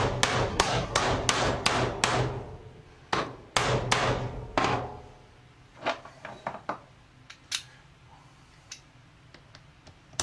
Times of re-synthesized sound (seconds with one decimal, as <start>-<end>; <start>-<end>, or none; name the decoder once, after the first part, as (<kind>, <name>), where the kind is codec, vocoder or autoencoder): 0.5-1.0 (codec, SNAC)